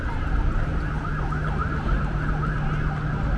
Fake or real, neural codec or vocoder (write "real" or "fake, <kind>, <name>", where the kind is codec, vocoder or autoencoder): real